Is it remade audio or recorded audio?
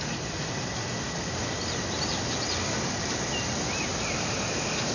recorded